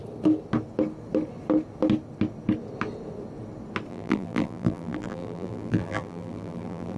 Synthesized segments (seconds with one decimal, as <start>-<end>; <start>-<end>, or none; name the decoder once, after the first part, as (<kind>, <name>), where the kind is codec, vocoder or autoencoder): 3.9-7.0 (vocoder, BigVGAN v2)